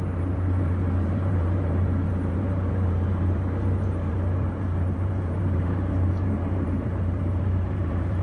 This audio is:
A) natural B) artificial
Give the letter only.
B